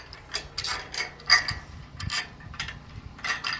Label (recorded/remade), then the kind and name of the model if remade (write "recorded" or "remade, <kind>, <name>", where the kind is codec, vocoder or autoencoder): remade, vocoder, BigVGAN v2